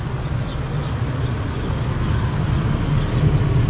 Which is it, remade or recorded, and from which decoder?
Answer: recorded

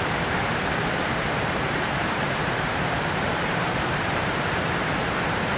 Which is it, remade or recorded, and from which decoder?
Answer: remade, vocoder, BigVGAN v2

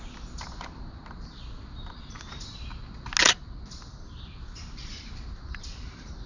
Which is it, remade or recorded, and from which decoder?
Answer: recorded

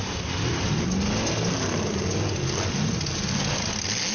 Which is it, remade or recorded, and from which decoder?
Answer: recorded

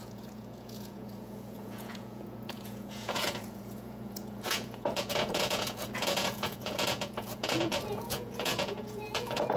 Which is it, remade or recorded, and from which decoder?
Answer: remade, vocoder, Vocos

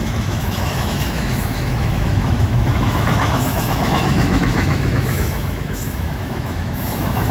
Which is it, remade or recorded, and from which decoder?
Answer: remade, autoencoder, DAC-VAE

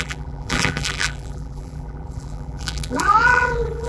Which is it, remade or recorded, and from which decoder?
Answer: remade, vocoder, BigVGAN v2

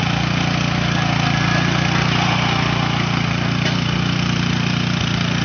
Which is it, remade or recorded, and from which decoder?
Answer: recorded